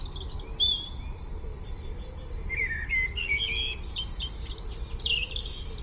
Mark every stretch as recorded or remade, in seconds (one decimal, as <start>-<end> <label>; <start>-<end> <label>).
0.0-5.8 recorded